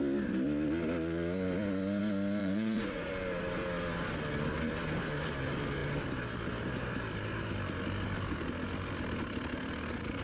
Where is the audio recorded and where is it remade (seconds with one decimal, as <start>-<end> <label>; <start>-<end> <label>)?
0.0-2.4 recorded; 2.4-3.1 remade; 3.1-10.2 recorded